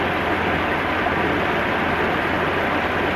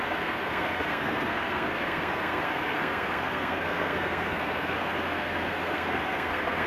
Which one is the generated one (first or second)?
second